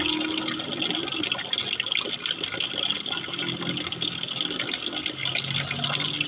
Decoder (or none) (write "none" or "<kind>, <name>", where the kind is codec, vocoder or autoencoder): none